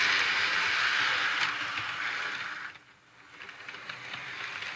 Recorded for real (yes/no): yes